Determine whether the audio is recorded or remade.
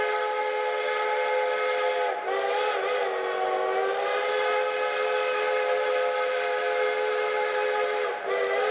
recorded